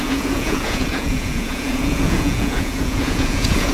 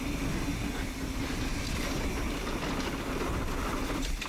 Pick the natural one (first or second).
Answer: second